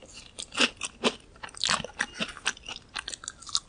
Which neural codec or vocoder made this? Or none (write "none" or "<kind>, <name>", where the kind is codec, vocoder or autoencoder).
none